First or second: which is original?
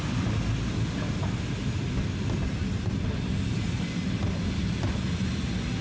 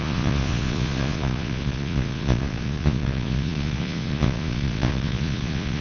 first